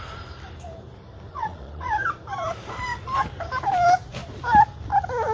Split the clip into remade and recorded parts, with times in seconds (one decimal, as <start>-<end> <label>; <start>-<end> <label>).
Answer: 0.0-1.3 recorded; 1.3-1.9 remade; 1.9-5.3 recorded